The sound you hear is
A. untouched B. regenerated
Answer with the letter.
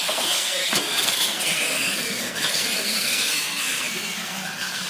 B